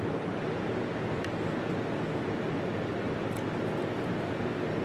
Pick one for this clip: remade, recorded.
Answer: recorded